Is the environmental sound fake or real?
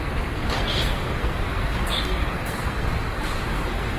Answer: fake